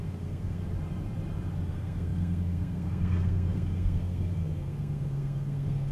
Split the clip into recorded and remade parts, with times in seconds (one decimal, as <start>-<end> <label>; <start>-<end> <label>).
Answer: 0.0-0.6 remade; 0.6-1.7 recorded; 1.7-5.9 remade